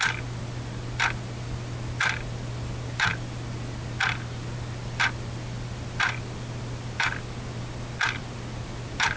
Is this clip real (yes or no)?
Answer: yes